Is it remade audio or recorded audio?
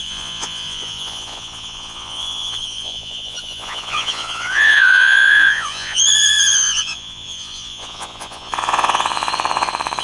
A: remade